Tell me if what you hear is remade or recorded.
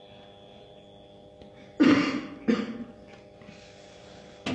recorded